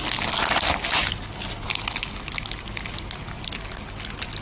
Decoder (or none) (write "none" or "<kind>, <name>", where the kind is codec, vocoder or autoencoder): none